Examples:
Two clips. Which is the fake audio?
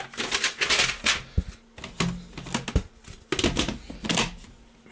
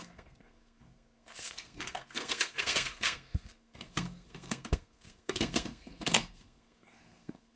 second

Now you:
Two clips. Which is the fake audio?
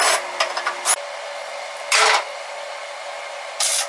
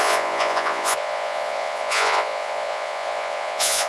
second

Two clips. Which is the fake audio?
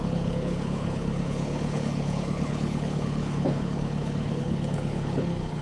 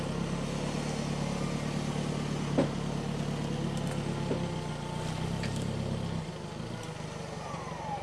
first